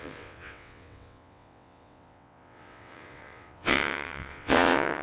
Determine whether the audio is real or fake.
fake